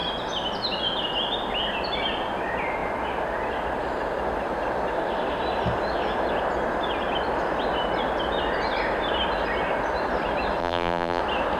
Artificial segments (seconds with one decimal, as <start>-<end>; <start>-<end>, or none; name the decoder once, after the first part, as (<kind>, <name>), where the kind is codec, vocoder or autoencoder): 10.6-11.2 (vocoder, BigVGAN v2)

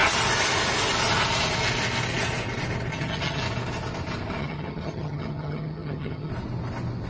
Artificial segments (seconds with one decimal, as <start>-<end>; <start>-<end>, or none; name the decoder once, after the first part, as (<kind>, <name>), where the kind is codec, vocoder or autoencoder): 2.9-3.4 (vocoder, HiFi-GAN); 4.4-6.3